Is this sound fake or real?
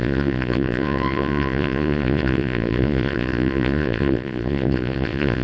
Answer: fake